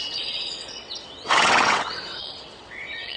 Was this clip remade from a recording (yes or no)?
yes